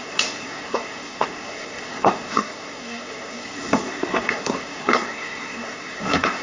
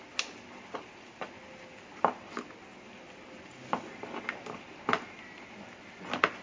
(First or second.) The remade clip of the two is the first